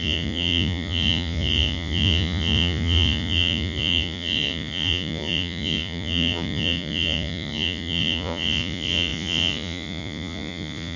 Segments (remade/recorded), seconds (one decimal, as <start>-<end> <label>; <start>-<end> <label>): 0.0-11.0 remade